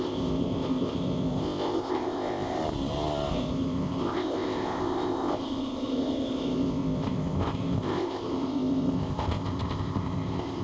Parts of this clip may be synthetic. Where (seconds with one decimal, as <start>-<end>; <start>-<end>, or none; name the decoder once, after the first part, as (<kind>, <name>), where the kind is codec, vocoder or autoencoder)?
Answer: 0.0-2.6 (codec, ZipCodec); 3.3-10.6

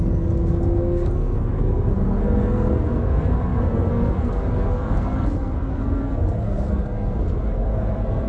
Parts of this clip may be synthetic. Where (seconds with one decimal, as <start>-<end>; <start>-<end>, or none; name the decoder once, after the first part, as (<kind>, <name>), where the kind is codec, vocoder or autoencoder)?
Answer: 0.0-8.3 (codec, SNAC)

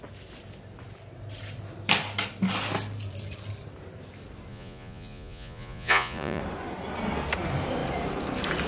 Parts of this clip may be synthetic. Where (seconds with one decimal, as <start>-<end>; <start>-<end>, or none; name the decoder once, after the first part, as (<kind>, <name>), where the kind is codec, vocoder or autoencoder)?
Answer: 4.5-6.4 (vocoder, Vocos)